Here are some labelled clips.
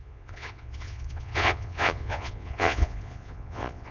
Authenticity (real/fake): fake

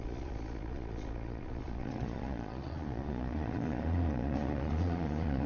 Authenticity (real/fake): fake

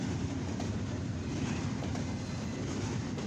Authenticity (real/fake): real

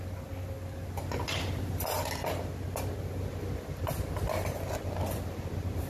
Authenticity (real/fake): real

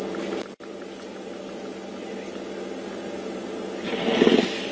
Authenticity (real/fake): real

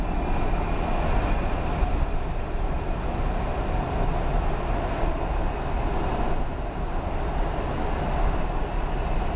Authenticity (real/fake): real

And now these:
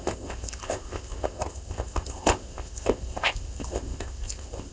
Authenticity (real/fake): fake